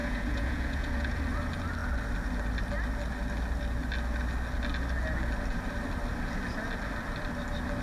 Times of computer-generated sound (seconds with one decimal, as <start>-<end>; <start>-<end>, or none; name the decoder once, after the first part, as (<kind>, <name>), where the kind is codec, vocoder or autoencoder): 0.0-1.2 (vocoder, Vocos)